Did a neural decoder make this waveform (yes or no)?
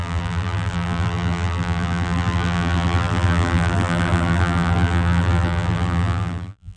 yes